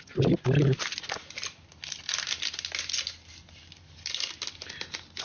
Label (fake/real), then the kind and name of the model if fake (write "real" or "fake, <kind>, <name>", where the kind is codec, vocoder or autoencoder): real